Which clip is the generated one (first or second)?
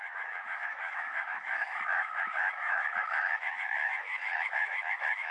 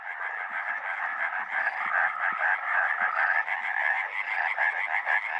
first